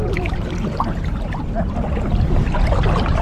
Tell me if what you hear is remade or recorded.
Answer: recorded